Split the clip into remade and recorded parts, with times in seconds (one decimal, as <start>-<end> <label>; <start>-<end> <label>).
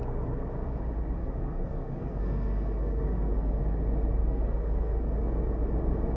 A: 0.0-1.2 recorded; 1.2-3.6 remade; 3.6-4.2 recorded; 4.2-5.1 remade; 5.1-6.2 recorded